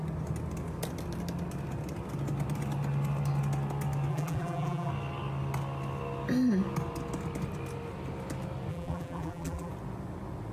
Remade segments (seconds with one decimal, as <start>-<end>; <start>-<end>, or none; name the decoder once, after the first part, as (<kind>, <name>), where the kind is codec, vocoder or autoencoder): 4.1-4.9 (vocoder, BigVGAN v2); 8.7-9.7